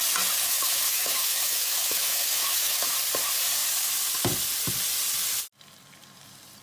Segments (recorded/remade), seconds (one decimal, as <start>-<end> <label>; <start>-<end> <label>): 0.0-0.5 recorded; 0.5-2.9 remade; 2.9-6.6 recorded